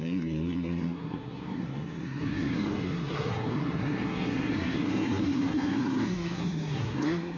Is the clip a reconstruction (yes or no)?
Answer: yes